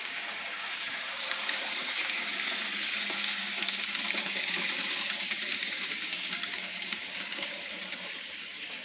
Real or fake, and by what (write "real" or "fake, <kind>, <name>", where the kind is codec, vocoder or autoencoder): fake, codec, DAC